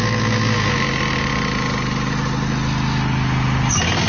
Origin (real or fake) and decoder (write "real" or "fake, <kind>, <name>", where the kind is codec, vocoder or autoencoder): real